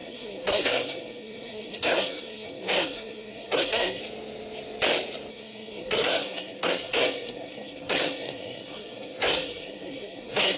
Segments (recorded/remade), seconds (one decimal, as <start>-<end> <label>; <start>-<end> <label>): 0.0-4.0 remade; 4.0-5.3 recorded; 5.3-10.6 remade